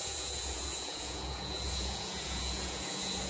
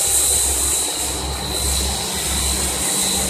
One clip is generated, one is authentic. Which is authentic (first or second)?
second